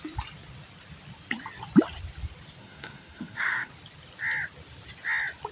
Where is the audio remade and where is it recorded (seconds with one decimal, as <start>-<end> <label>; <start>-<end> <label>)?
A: 0.0-2.6 recorded; 2.6-3.7 remade; 3.7-5.5 recorded

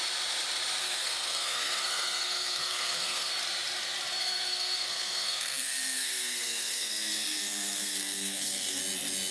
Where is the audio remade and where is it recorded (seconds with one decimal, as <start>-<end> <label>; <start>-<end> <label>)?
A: 0.0-0.8 recorded; 0.8-3.3 remade; 3.3-4.2 recorded; 4.2-8.8 remade; 8.8-9.3 recorded

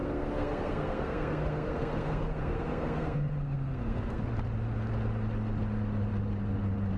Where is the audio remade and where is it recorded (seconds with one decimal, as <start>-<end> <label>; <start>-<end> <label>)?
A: 0.0-4.2 remade; 4.2-7.0 recorded

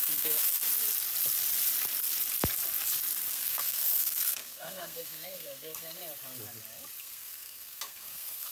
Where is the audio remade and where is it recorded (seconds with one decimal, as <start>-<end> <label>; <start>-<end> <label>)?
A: 0.0-0.6 remade; 0.6-3.3 recorded; 3.3-6.0 remade; 6.0-7.0 recorded; 7.0-8.5 remade

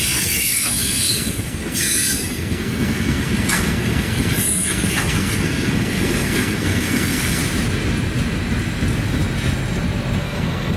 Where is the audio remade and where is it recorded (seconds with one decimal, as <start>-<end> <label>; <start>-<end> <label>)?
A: 0.0-7.4 remade; 7.4-10.2 recorded; 10.2-10.8 remade

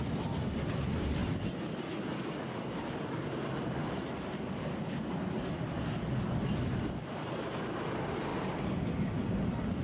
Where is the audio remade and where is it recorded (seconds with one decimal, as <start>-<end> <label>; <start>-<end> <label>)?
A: 0.0-9.8 recorded

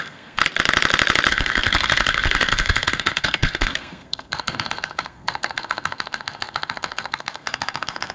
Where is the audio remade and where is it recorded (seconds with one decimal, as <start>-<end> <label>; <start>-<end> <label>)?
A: 0.0-0.4 remade; 0.4-1.3 recorded; 1.3-8.1 remade

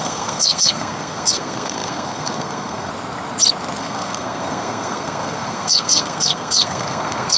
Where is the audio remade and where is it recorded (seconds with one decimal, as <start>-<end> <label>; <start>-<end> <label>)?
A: 0.0-2.9 remade; 2.9-3.8 recorded; 3.8-7.4 remade